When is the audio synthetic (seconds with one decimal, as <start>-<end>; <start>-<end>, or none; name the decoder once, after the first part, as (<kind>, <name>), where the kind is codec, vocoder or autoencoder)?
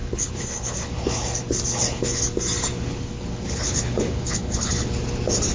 0.0-2.2 (codec, HILCodec); 2.7-4.7